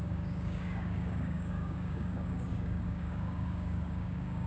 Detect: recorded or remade remade